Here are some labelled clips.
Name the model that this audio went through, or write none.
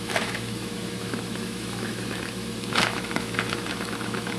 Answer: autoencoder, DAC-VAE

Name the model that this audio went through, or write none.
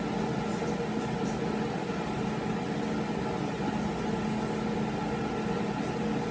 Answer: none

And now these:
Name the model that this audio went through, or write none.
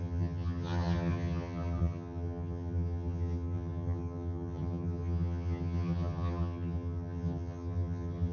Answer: vocoder, HiFi-GAN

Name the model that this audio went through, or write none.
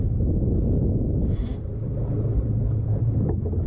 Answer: none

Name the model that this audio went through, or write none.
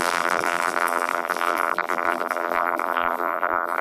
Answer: vocoder, BigVGAN v2